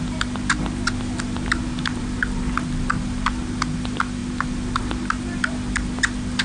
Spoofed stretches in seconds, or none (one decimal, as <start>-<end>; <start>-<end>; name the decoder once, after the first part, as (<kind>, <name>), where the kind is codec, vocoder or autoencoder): none